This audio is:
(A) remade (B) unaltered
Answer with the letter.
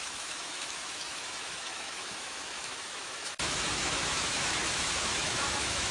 A